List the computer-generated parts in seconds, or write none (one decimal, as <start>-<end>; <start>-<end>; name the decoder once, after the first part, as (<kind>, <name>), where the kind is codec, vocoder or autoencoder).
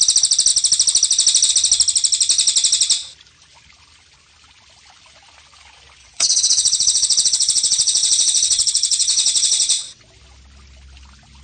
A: 6.0-10.0 (vocoder, WaveNeXt)